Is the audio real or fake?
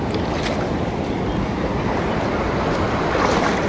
real